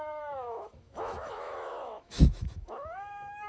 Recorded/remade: remade